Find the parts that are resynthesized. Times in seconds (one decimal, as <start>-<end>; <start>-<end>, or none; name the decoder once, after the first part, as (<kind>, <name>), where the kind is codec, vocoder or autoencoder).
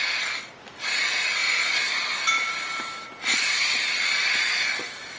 none